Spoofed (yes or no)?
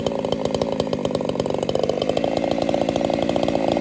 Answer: no